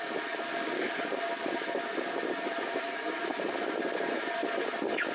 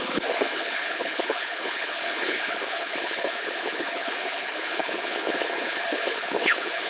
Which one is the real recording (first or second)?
first